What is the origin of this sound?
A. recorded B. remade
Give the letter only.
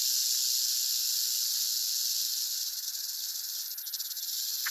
A